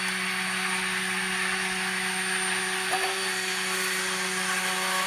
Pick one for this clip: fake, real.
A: real